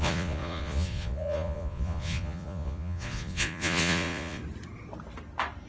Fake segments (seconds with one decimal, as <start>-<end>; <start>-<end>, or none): 0.0-4.4